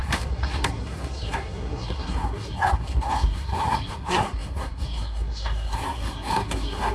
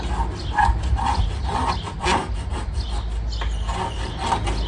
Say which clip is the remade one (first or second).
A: first